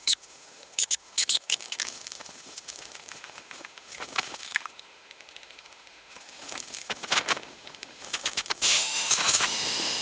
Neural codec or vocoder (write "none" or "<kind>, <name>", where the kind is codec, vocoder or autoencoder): autoencoder, DAC-VAE